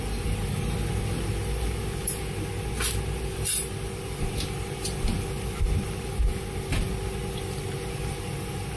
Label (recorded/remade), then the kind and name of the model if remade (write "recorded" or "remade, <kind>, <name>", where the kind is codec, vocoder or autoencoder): recorded